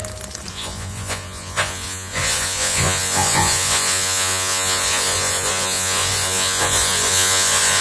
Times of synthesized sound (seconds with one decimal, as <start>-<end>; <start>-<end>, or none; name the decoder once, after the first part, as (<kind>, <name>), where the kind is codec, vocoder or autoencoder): 0.5-7.8 (vocoder, Vocos)